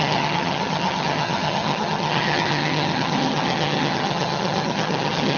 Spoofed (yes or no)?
yes